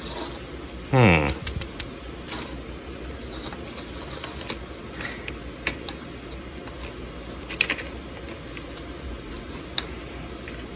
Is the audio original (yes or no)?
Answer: yes